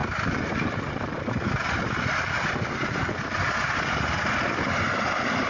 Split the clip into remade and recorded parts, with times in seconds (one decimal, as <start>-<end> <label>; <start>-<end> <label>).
0.0-5.5 recorded